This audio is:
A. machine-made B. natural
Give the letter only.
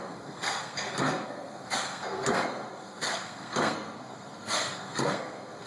A